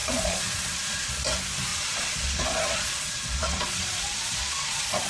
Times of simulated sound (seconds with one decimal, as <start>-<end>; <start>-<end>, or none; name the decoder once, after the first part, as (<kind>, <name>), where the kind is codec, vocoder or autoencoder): 0.0-1.1 (vocoder, Vocos); 1.7-5.1

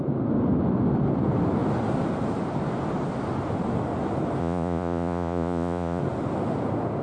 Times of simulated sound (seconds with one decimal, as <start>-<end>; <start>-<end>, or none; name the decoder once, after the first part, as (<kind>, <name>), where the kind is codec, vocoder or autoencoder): 4.4-6.0 (vocoder, Vocos)

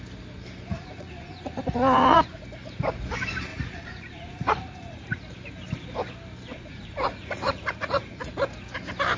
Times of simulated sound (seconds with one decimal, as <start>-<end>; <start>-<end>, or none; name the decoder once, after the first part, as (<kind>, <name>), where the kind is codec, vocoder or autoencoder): 0.7-2.4 (vocoder, Vocos); 3.5-5.2; 6.5-8.3

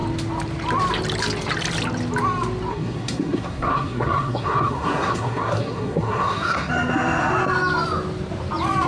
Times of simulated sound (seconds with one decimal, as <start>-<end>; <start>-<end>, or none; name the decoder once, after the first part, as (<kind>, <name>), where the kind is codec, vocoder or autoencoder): 2.7-6.7 (codec, SNAC)

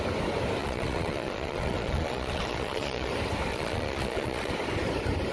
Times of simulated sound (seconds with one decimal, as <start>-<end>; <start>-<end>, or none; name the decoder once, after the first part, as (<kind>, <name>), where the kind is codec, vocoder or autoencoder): 0.6-3.1 (vocoder, Vocos); 3.5-4.5